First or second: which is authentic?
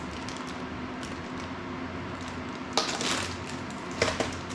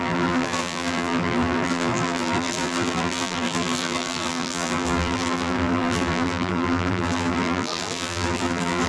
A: first